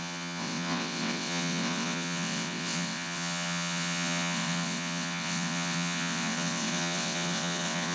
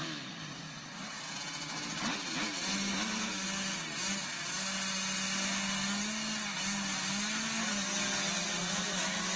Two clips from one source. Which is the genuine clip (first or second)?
second